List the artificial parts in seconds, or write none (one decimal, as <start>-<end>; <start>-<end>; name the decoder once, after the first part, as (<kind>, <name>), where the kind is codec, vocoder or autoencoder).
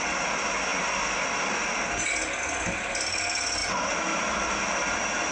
none